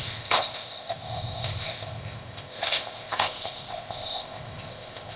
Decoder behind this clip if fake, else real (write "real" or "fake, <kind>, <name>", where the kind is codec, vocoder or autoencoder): fake, codec, ZipCodec